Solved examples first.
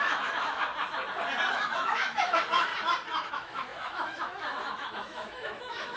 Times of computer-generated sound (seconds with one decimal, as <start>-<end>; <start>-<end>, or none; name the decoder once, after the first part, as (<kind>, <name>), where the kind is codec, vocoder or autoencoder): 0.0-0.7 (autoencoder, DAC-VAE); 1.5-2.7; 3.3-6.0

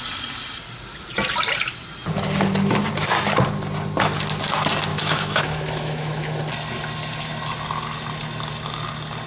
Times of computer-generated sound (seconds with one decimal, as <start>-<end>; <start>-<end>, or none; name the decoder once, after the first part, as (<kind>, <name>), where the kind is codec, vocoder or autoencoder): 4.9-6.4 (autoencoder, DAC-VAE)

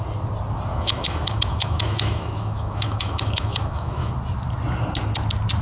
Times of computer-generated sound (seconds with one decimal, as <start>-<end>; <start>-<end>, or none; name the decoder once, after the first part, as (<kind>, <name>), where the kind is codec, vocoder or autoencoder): 0.7-4.1 (autoencoder, DAC-VAE)